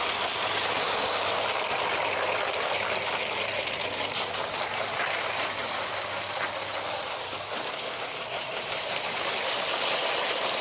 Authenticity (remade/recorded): recorded